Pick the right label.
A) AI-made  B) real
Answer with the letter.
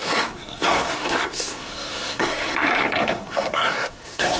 A